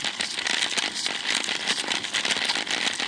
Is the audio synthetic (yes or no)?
no